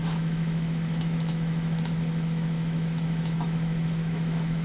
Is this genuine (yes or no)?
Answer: no